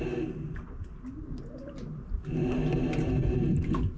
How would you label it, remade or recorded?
recorded